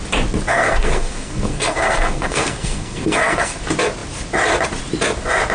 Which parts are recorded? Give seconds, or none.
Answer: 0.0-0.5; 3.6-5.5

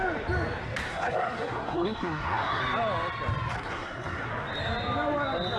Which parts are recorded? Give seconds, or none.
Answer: 0.0-0.9; 2.6-3.5; 4.3-5.6